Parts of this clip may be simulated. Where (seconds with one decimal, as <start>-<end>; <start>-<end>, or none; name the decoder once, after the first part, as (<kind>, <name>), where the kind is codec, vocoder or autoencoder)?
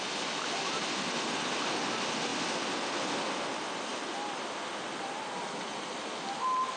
none